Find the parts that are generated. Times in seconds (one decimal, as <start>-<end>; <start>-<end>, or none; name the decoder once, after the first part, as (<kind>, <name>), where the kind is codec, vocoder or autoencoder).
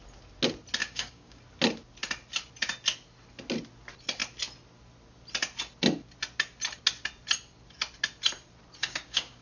0.8-1.4 (codec, DAC); 8.8-9.4